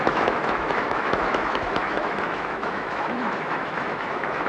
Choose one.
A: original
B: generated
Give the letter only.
B